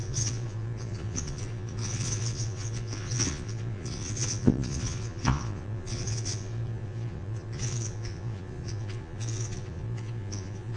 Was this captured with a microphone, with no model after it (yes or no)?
no